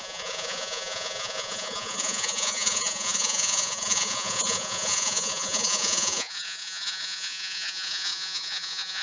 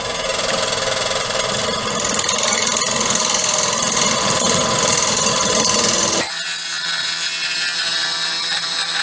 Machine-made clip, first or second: first